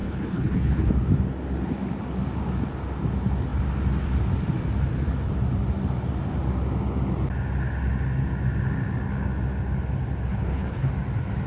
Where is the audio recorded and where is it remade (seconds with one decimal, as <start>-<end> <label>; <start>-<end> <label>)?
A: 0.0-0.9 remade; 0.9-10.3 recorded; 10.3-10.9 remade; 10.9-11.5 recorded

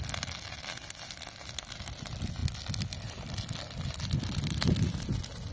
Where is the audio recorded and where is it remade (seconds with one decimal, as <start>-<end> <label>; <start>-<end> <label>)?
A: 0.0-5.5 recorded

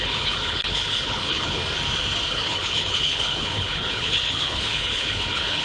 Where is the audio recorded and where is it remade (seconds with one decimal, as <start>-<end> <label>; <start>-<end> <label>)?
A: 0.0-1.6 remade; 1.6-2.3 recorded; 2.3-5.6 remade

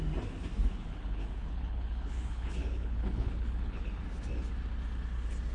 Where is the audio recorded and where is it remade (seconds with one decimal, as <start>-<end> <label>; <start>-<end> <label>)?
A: 0.0-0.7 recorded; 0.7-4.0 remade; 4.0-5.5 recorded

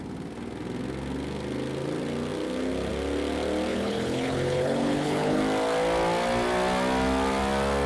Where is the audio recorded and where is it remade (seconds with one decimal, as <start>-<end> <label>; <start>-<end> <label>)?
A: 0.0-3.7 recorded; 3.7-5.4 remade; 5.4-7.9 recorded

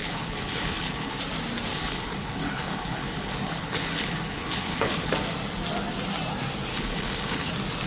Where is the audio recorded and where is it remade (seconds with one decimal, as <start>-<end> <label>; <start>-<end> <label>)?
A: 0.0-1.2 remade; 1.2-1.7 recorded; 1.7-5.1 remade; 5.1-6.7 recorded; 6.7-7.5 remade; 7.5-7.9 recorded

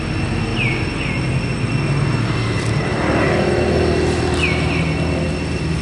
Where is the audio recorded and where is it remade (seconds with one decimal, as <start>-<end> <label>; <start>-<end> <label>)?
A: 0.0-5.8 recorded